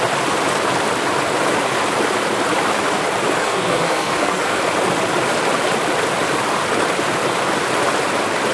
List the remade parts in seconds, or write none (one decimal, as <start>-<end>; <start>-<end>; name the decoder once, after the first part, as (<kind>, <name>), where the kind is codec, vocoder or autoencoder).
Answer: 3.4-4.6 (codec, SNAC)